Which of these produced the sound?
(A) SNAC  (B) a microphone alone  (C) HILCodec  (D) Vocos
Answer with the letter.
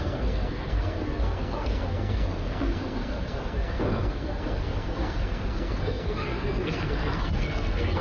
A